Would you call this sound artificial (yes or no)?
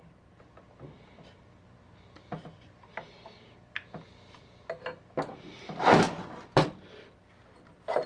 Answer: no